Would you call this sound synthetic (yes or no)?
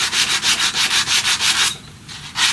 no